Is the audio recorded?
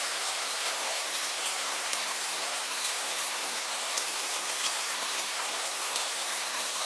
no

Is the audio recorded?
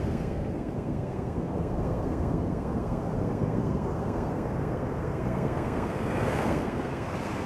no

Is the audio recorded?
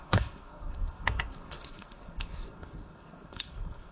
no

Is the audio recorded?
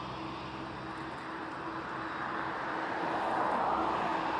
yes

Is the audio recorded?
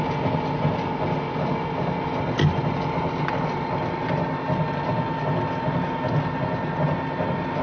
yes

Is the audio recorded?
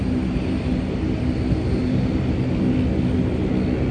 yes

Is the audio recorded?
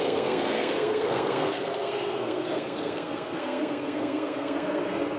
no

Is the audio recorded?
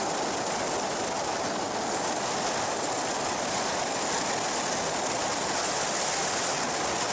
yes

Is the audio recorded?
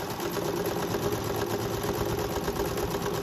yes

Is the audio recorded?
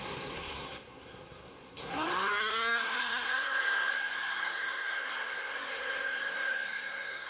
no